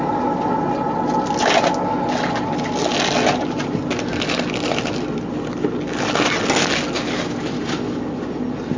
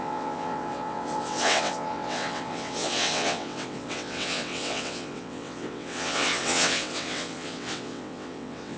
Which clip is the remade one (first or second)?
second